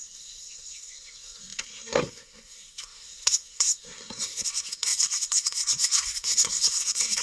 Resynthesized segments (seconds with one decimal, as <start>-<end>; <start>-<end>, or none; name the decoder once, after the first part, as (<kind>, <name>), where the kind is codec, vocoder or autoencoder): 0.0-7.2 (codec, SNAC)